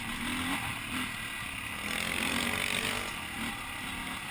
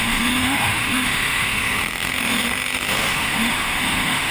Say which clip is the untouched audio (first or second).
first